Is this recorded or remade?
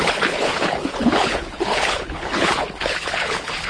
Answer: remade